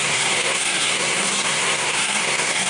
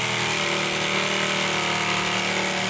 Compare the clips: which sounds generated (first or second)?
first